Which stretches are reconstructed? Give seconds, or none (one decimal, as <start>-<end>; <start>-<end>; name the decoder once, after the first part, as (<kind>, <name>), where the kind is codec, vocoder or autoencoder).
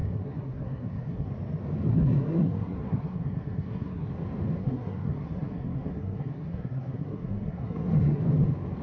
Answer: 0.0-1.3 (codec, SNAC); 1.9-4.1; 4.6-8.2